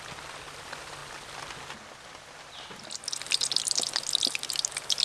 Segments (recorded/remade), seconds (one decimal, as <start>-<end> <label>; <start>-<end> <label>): 0.0-5.0 recorded